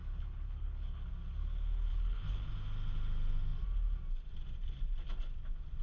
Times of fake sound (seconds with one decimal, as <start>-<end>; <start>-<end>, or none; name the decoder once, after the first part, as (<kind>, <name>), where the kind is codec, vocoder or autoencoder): 0.0-1.1 (codec, HILCodec); 1.9-2.5